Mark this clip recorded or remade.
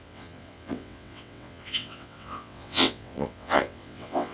remade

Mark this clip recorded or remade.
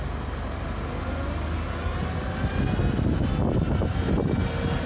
recorded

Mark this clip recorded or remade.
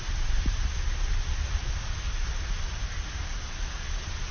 recorded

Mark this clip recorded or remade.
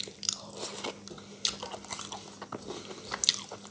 recorded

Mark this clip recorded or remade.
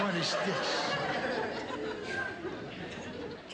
recorded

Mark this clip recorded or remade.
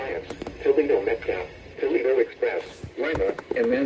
recorded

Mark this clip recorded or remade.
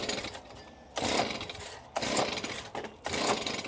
recorded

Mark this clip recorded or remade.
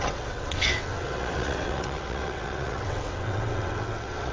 remade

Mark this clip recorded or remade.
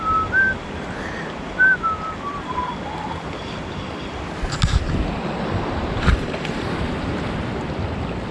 recorded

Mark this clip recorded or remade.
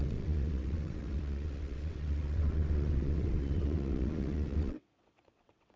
remade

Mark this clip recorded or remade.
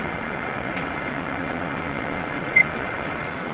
remade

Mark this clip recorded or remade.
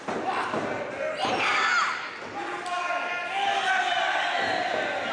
recorded